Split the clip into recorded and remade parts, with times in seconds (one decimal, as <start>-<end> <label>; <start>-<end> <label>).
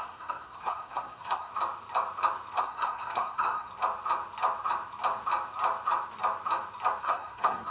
0.0-1.5 remade; 1.5-2.6 recorded; 2.6-3.7 remade; 3.7-7.0 recorded; 7.0-7.7 remade